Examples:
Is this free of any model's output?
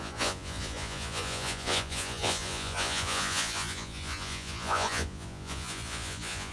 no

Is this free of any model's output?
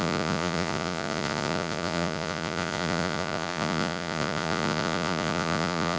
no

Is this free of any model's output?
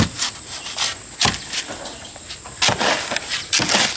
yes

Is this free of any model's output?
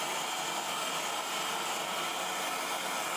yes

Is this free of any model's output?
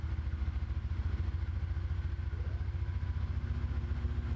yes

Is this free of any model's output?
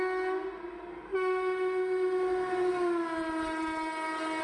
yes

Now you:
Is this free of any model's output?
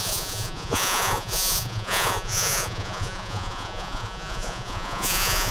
no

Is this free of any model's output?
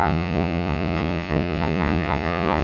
no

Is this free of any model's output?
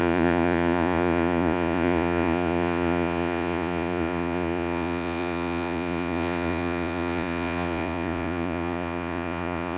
no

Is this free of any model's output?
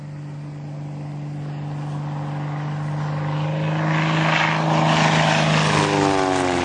yes